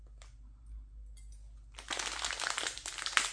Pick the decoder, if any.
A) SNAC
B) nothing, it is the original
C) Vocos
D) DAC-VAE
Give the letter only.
B